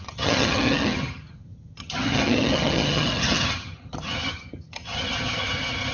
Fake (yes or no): yes